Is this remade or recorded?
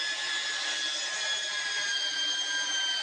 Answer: recorded